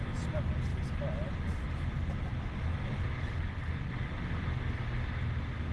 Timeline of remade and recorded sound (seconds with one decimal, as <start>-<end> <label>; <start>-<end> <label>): 0.0-5.7 recorded